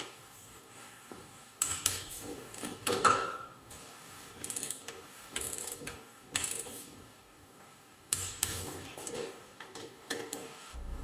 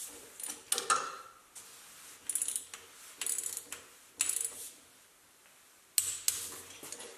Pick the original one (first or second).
second